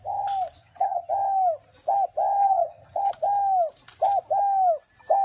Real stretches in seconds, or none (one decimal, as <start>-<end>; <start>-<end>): 0.0-0.6; 1.1-2.4; 3.1-5.2